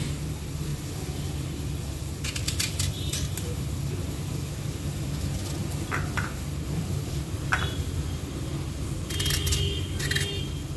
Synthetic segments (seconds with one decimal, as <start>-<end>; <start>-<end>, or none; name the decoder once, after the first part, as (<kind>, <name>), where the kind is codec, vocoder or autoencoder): 0.7-5.0 (vocoder, BigVGAN v2); 5.6-7.9